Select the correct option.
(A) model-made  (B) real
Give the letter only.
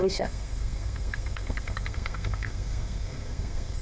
A